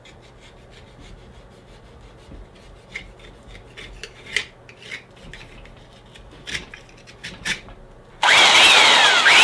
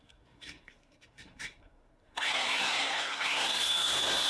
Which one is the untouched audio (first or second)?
first